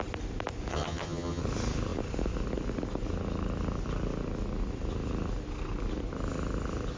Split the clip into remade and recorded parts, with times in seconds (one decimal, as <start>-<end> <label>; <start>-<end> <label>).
0.0-0.7 recorded; 0.7-1.4 remade; 1.4-7.0 recorded